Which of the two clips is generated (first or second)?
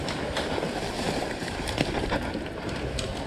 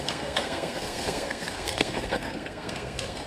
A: second